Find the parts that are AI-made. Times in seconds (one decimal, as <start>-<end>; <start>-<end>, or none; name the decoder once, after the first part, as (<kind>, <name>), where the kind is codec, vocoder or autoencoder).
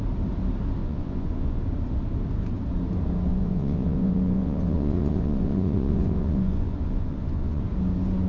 0.8-1.6 (vocoder, Vocos); 3.3-7.6